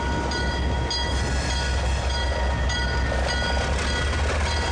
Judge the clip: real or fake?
real